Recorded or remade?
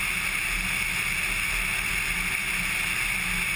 recorded